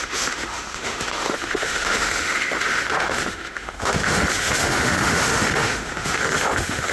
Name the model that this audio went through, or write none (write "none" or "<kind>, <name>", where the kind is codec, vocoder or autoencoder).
autoencoder, DAC-VAE